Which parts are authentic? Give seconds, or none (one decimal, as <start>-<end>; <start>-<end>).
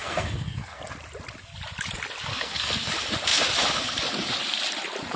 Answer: 0.8-2.3; 2.9-5.2